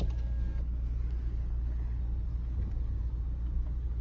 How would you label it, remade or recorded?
recorded